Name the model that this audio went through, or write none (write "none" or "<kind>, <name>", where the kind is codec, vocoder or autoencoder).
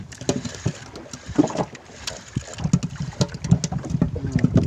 none